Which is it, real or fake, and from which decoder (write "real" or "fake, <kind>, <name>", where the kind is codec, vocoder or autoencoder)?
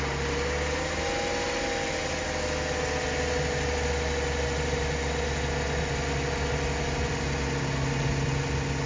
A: real